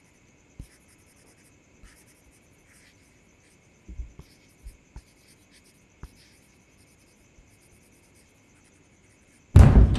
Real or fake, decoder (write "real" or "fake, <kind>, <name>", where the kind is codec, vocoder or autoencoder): fake, vocoder, BigVGAN v2